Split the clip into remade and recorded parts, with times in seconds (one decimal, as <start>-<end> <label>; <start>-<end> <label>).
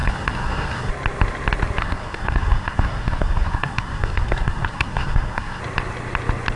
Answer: 0.0-0.9 remade; 0.9-1.8 recorded; 1.8-5.6 remade; 5.6-6.6 recorded